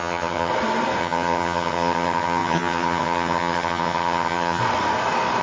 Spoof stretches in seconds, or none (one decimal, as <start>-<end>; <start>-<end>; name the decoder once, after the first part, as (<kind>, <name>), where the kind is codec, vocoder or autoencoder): 0.0-0.5 (vocoder, HiFi-GAN); 1.0-4.6